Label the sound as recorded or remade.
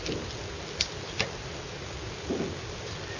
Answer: recorded